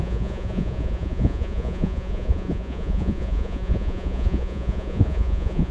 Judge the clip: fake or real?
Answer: fake